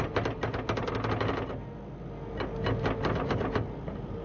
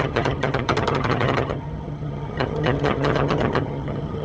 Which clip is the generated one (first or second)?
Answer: second